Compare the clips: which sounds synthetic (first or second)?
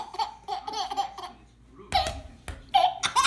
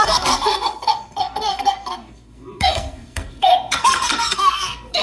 second